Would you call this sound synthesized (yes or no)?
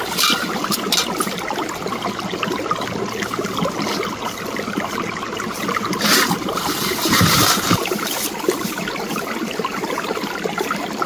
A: no